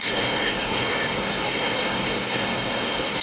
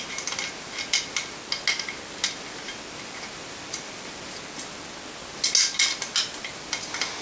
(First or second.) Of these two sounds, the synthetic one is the first